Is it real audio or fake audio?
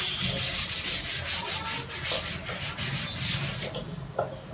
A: real